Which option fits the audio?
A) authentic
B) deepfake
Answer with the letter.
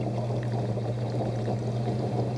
B